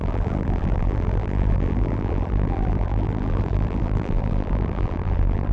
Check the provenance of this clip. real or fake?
fake